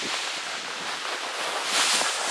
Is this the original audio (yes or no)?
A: yes